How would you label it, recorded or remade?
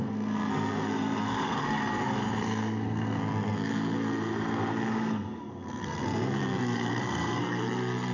remade